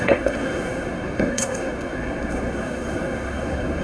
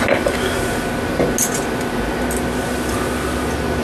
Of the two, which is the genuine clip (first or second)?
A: second